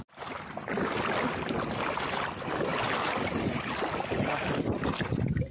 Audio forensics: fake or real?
real